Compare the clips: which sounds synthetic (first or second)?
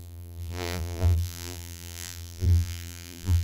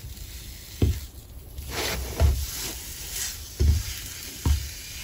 first